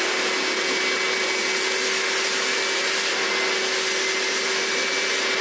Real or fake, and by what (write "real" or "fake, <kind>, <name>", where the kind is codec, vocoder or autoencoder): real